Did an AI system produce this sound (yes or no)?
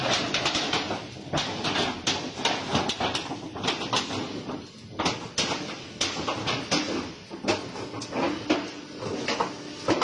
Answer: no